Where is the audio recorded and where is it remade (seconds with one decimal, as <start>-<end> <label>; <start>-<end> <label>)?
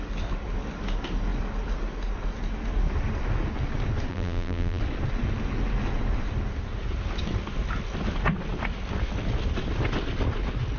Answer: 0.0-4.1 recorded; 4.1-4.8 remade; 4.8-10.8 recorded